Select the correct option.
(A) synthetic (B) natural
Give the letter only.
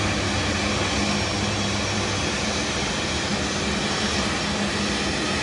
B